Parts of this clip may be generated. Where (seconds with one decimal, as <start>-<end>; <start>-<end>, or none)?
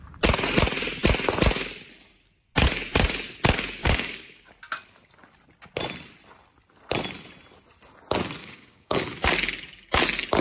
3.8-4.4; 8.4-9.0